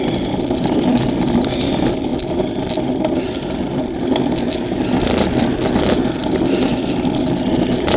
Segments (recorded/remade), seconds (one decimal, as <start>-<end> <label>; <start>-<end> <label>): 0.0-8.0 recorded